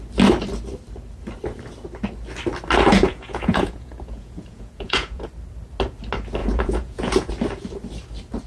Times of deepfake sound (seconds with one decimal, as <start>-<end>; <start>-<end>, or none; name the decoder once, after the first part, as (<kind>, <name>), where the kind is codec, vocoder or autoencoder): 2.9-5.3 (vocoder, Vocos); 6.4-7.3